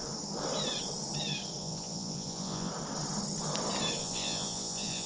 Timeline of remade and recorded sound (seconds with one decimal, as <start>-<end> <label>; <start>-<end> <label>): 0.0-1.6 recorded; 1.6-2.7 remade; 2.7-4.0 recorded; 4.0-5.1 remade